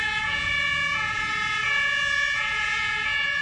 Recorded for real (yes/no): no